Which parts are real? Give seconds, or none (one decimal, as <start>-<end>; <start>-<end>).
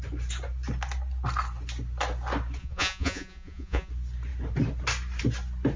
0.0-2.6; 3.9-5.8